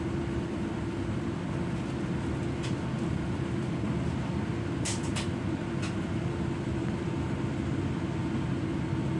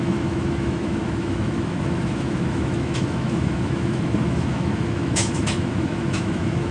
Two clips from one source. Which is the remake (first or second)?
second